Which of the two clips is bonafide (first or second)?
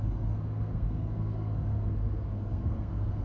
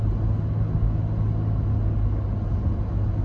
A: second